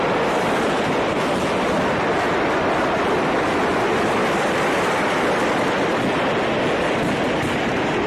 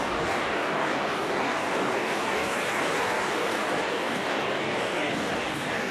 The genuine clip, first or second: first